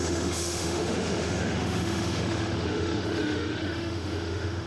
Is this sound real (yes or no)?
no